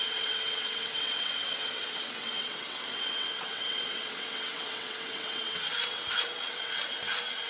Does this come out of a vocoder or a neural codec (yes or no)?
yes